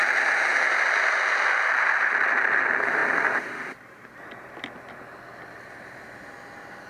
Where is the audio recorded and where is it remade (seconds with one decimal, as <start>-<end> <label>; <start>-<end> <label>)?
0.0-6.9 recorded